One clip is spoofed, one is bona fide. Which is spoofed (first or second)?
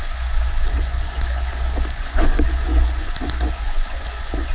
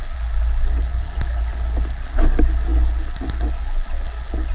first